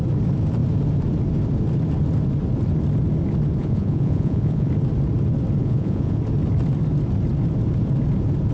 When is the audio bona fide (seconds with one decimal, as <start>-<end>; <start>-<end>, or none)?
0.0-3.6; 4.7-5.6; 6.2-8.5